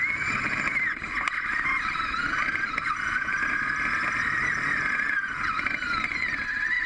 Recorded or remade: recorded